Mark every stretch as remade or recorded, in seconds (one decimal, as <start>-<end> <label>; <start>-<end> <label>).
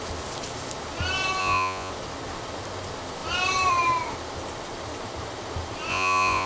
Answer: 0.0-1.4 recorded; 1.4-1.9 remade; 1.9-5.9 recorded; 5.9-6.5 remade